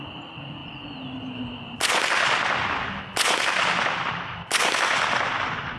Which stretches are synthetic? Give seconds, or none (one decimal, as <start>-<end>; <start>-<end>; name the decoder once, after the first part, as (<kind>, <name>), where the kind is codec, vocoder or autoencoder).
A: none